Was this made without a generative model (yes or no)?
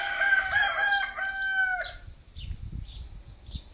yes